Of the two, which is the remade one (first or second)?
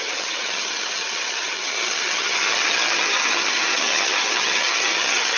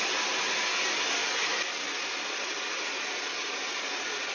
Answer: first